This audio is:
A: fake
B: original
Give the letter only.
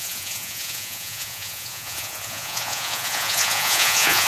A